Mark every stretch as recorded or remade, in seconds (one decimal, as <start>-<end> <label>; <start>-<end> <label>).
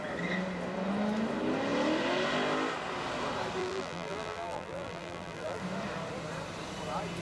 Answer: 0.0-3.6 recorded; 3.6-5.6 remade; 5.6-7.2 recorded